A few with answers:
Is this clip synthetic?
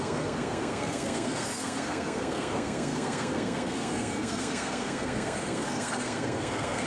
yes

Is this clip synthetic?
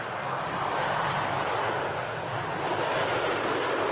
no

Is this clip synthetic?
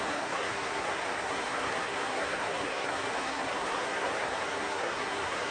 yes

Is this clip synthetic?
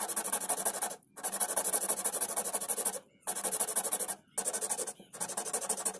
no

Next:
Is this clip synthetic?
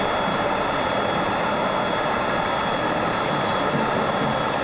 no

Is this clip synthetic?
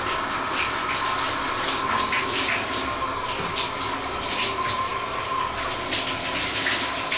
no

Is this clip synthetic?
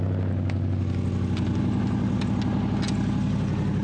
no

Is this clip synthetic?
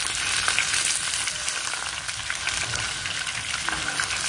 no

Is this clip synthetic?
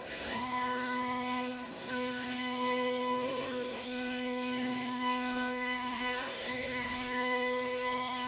yes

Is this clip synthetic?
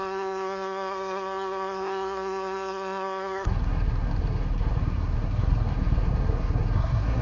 yes